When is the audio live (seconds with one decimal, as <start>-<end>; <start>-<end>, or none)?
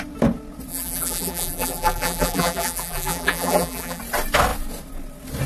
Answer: 0.0-0.7; 4.0-5.5